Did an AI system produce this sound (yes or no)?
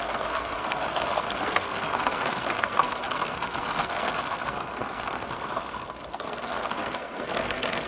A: yes